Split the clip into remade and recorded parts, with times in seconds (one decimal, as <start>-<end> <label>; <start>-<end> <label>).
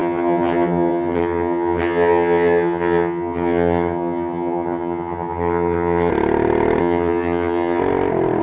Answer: 0.0-6.1 remade; 6.1-6.8 recorded; 6.8-7.8 remade; 7.8-8.4 recorded